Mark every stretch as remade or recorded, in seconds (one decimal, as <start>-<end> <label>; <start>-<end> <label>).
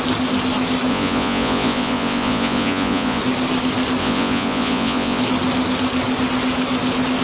0.0-0.9 recorded; 0.9-3.2 remade; 3.2-4.0 recorded; 4.0-5.2 remade; 5.2-7.2 recorded